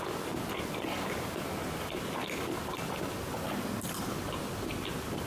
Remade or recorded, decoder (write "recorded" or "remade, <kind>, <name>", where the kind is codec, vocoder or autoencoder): recorded